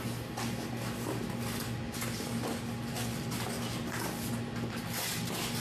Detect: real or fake real